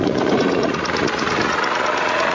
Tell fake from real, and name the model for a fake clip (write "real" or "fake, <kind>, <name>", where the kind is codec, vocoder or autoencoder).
fake, vocoder, Vocos